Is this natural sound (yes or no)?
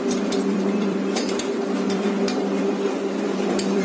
no